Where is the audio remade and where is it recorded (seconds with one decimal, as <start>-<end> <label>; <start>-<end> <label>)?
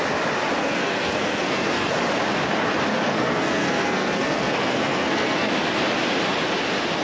0.0-0.6 recorded; 0.6-1.9 remade; 1.9-2.9 recorded; 2.9-5.5 remade; 5.5-7.0 recorded